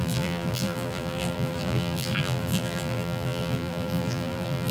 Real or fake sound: fake